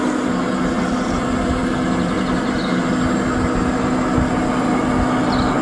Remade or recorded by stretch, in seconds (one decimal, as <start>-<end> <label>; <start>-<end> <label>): 0.0-5.6 recorded